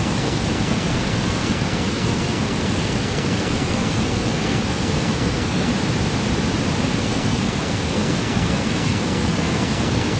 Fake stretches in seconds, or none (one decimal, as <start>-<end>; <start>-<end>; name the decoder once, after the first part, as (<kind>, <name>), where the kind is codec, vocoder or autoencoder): 0.0-5.7 (codec, SNAC); 7.0-10.2